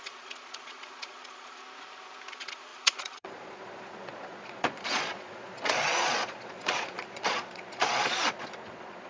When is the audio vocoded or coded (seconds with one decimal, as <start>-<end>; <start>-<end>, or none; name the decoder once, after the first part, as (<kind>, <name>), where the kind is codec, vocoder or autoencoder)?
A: 0.0-1.6 (vocoder, Vocos); 2.3-9.1